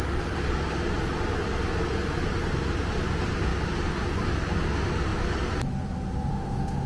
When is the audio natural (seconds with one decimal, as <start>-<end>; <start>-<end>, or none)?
0.0-6.3

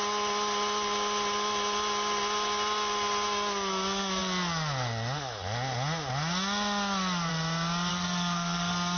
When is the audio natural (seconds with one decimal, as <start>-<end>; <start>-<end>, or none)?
0.0-7.9

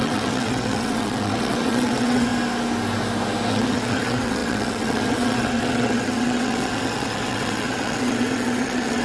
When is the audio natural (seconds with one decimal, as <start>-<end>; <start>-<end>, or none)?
2.3-3.5

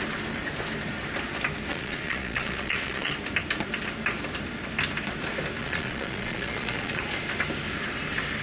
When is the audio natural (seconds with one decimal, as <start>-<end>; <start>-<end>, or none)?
0.0-1.7; 3.1-5.6; 7.0-8.4